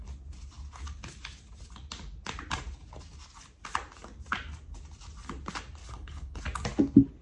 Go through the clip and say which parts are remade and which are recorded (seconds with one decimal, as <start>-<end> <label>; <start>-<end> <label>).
0.0-5.8 recorded; 5.8-6.4 remade; 6.4-7.2 recorded